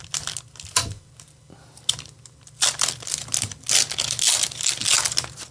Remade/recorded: recorded